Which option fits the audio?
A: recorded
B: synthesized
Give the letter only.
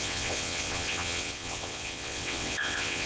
B